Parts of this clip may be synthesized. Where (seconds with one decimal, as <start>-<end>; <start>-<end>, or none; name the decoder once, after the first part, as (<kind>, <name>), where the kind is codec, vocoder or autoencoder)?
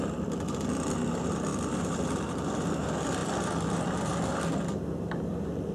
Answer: 1.5-2.7 (vocoder, BigVGAN v2); 3.2-4.3